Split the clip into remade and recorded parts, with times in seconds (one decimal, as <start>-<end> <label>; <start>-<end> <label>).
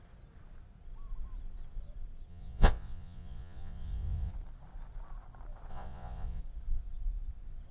0.0-2.3 recorded; 2.3-4.3 remade; 4.3-5.7 recorded; 5.7-6.4 remade; 6.4-7.7 recorded